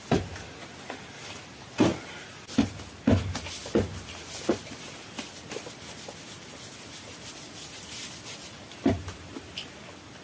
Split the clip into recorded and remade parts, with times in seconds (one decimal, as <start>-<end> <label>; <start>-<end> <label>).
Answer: 0.0-10.2 recorded